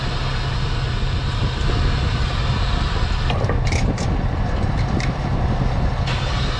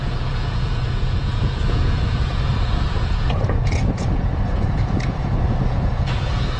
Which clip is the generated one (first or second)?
second